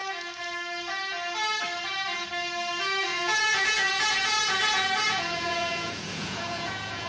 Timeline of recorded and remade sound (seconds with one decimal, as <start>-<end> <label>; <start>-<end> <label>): 0.0-3.1 recorded; 3.1-7.1 remade